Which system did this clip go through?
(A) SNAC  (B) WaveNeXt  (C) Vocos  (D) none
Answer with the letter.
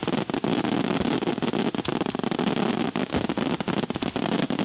D